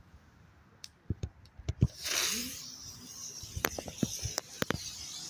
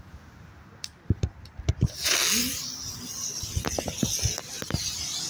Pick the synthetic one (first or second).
first